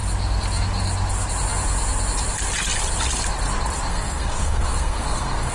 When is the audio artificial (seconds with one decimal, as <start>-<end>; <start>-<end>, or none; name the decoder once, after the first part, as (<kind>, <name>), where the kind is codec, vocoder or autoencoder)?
3.9-5.5 (codec, SNAC)